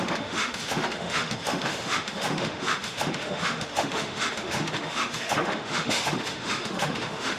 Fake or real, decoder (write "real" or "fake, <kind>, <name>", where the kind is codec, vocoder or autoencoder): fake, autoencoder, DAC-VAE